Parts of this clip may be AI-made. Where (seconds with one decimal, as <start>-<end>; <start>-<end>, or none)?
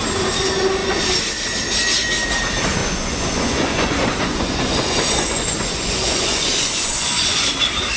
2.8-7.5